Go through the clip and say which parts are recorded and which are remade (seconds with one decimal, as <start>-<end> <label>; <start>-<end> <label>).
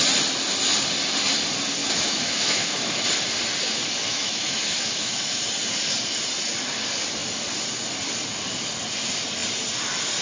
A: 0.0-1.8 recorded; 1.8-2.9 remade; 2.9-4.1 recorded; 4.1-5.4 remade; 5.4-10.2 recorded